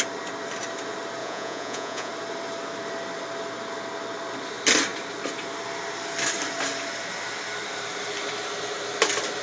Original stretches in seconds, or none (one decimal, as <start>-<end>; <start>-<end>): 0.0-1.2; 2.1-9.4